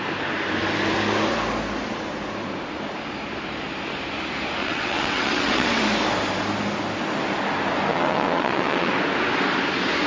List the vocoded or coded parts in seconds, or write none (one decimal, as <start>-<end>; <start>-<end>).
4.6-5.8; 7.9-8.9